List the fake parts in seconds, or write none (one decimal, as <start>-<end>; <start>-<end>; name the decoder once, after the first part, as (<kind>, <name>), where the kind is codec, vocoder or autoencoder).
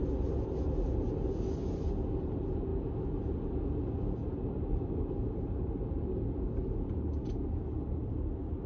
none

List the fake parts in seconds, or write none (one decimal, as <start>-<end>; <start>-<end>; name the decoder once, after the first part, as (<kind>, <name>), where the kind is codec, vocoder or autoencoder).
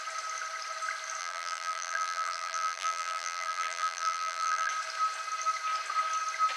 1.2-4.7 (vocoder, BigVGAN v2)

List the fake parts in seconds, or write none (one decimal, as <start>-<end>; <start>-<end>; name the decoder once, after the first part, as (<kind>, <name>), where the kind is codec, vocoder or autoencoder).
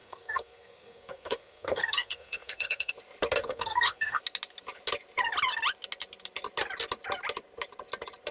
0.0-2.9 (codec, SNAC); 3.4-4.2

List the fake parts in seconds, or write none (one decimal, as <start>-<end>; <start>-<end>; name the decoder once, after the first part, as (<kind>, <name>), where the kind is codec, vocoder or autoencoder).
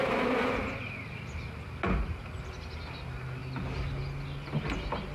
none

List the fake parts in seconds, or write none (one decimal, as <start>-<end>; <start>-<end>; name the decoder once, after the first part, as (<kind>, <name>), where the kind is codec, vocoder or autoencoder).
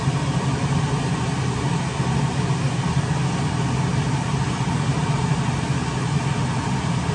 none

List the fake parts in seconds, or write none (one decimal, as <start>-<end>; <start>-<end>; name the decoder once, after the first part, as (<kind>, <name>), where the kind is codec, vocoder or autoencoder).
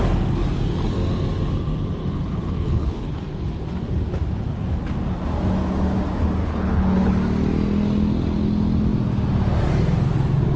2.0-3.1 (codec, HILCodec); 6.4-7.1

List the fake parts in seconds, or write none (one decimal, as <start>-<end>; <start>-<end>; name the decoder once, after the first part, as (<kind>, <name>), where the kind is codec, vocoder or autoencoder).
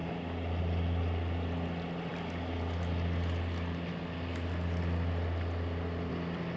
none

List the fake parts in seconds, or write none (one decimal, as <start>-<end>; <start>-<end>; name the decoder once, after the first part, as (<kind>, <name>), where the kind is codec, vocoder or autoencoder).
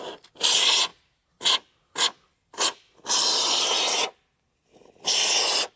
none